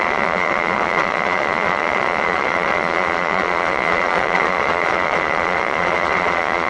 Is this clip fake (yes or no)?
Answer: yes